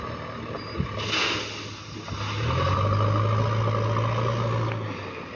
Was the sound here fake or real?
real